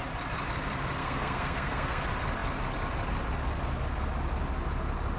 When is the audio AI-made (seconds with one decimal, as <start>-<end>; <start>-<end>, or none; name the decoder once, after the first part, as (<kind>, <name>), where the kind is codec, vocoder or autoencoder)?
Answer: 1.0-2.0 (codec, SNAC)